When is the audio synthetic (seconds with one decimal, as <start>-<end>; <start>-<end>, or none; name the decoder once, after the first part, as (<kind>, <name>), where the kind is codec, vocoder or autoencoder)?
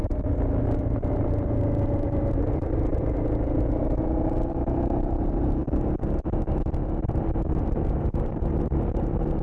0.0-5.6 (vocoder, BigVGAN v2); 7.0-9.4